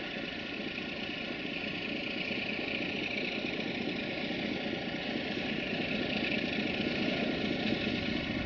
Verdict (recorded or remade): recorded